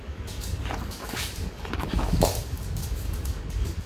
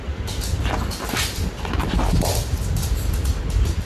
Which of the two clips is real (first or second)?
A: second